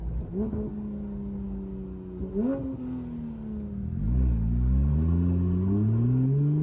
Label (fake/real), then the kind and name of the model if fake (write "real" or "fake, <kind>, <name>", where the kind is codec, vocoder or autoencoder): real